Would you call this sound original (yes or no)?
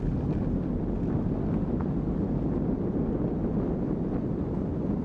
yes